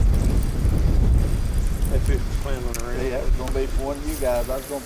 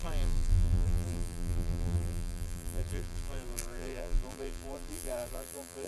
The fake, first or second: second